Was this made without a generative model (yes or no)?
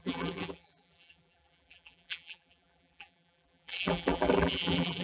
no